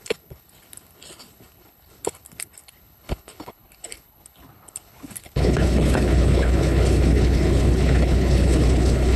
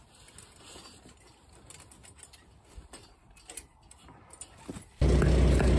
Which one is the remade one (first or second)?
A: first